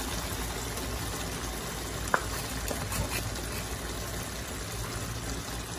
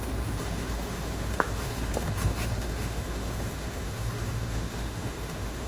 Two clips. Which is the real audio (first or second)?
first